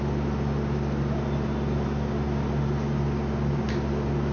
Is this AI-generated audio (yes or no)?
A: no